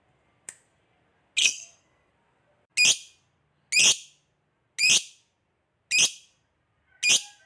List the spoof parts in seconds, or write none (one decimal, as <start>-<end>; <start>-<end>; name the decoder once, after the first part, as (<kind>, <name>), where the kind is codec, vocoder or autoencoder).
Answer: 1.4-2.1 (codec, SNAC)